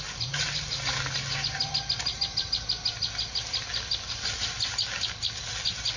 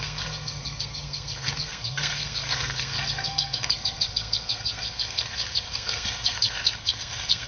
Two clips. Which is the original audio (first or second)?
first